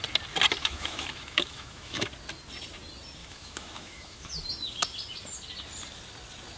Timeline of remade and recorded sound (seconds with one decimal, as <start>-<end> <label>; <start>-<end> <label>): 0.0-0.6 recorded; 0.6-2.1 remade; 2.1-3.2 recorded; 3.2-4.3 remade; 4.3-6.6 recorded